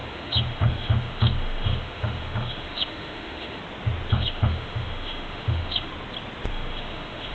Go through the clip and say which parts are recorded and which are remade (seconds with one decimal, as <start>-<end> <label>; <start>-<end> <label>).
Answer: 0.0-3.6 remade; 3.6-4.1 recorded; 4.1-5.9 remade; 5.9-6.5 recorded; 6.5-7.3 remade